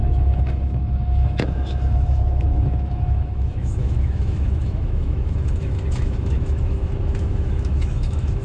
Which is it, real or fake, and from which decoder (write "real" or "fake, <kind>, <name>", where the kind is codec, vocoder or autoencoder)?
fake, autoencoder, DAC-VAE